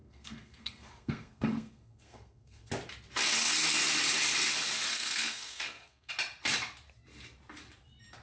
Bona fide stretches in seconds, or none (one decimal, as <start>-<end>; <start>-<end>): 2.7-4.9; 6.1-8.2